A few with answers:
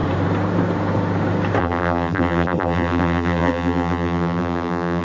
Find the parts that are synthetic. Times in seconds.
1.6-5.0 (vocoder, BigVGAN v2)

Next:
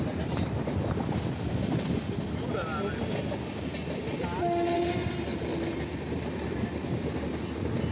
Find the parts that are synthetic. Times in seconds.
none

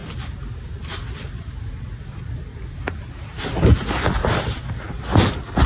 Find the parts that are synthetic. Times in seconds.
0.0-3.4 (vocoder, BigVGAN v2)

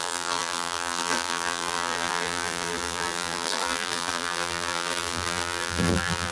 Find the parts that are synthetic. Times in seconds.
0.0-6.3 (vocoder, BigVGAN v2)

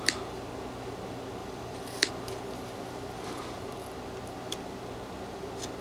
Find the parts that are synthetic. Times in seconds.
1.4-2.1 (vocoder, BigVGAN v2)